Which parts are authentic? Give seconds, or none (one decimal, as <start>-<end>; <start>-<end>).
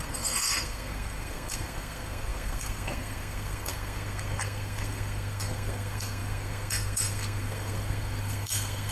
none